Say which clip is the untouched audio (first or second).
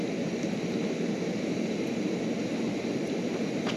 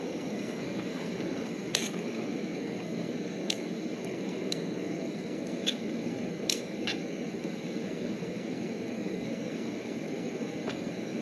first